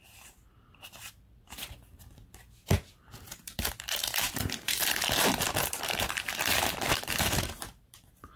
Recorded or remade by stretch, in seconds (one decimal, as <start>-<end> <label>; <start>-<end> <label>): 0.0-2.9 recorded; 2.9-4.8 remade; 4.8-5.5 recorded; 5.5-8.4 remade